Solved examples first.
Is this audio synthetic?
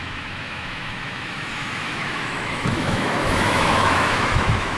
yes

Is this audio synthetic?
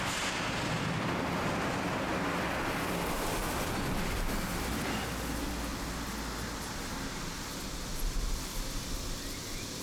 no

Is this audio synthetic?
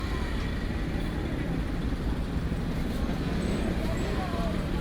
yes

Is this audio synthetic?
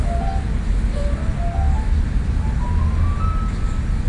no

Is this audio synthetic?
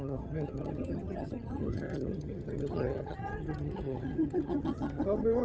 yes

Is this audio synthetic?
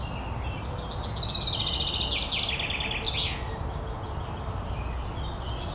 no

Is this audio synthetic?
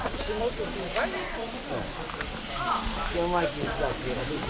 no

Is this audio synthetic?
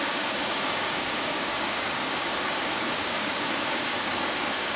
yes